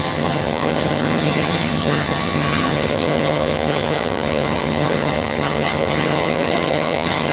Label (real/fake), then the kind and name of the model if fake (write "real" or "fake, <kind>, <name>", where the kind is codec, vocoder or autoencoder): fake, vocoder, HiFi-GAN